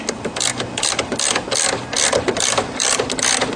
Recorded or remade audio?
recorded